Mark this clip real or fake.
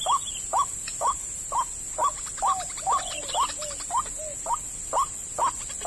real